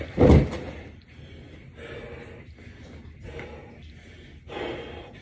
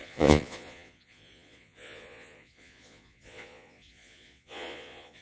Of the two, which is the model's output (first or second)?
second